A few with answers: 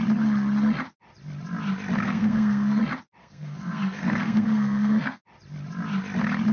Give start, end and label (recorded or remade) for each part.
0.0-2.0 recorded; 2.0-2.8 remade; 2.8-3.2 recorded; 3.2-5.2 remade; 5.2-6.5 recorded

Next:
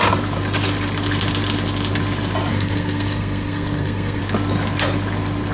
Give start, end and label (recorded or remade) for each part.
0.0-2.5 recorded; 2.5-4.2 remade; 4.2-5.5 recorded

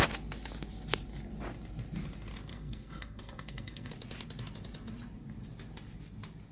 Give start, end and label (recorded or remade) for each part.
0.0-2.5 recorded; 2.5-3.9 remade; 3.9-6.5 recorded

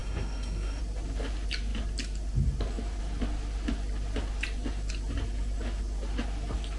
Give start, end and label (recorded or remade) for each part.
0.0-0.8 remade; 0.8-6.8 recorded

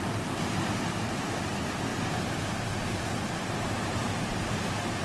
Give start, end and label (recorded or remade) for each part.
0.0-5.0 recorded

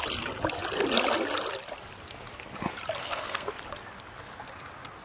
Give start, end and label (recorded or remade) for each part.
0.0-3.0 recorded; 3.0-3.5 remade; 3.5-5.0 recorded

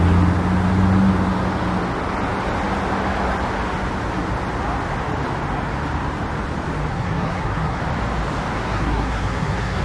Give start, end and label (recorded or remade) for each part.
0.0-6.9 recorded; 6.9-7.8 remade; 7.8-8.5 recorded; 8.5-9.8 remade

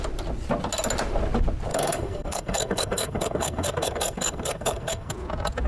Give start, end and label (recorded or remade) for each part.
0.0-1.7 recorded; 1.7-5.1 remade; 5.1-5.7 recorded